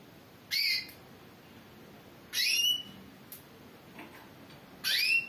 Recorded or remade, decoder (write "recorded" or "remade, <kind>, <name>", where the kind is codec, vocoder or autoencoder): recorded